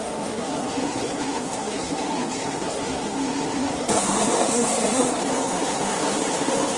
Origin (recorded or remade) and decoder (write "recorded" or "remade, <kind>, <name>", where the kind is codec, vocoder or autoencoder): remade, codec, SNAC